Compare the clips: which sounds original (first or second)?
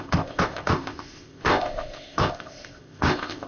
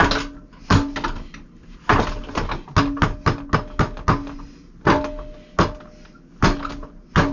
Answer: second